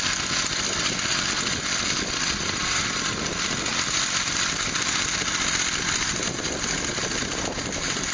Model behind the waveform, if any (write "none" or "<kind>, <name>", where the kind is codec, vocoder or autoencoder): none